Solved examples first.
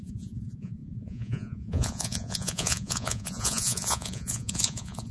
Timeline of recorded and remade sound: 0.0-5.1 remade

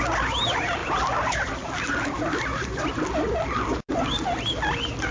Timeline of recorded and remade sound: 0.0-5.1 recorded

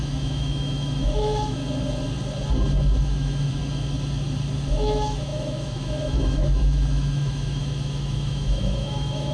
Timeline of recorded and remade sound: 0.0-1.6 remade; 1.6-3.0 recorded; 3.0-3.6 remade; 3.6-4.7 recorded; 4.7-9.3 remade

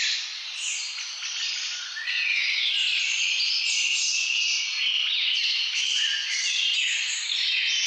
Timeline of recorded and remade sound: 0.0-7.9 recorded

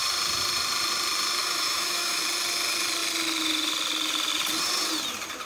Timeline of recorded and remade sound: 0.0-1.4 recorded; 1.4-2.2 remade; 2.2-5.5 recorded

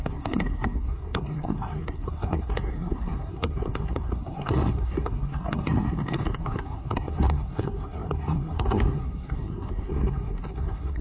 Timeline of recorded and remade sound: 0.0-11.0 remade